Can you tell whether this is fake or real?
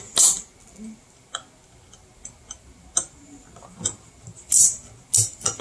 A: real